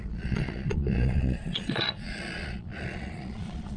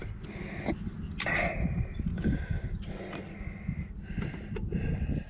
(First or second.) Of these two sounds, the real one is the second